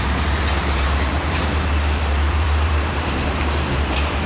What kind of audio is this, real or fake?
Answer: fake